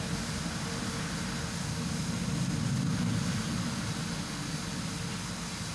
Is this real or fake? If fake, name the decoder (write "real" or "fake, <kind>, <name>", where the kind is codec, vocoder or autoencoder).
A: real